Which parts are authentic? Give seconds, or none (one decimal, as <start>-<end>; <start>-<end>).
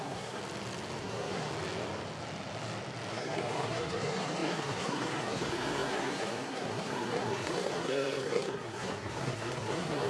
0.4-1.0; 1.5-3.1